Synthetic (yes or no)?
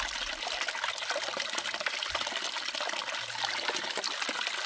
no